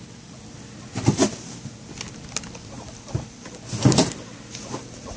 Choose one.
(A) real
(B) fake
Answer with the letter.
A